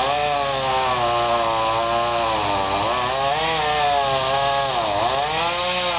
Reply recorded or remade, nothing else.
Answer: recorded